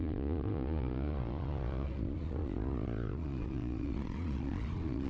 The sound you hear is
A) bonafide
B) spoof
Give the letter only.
B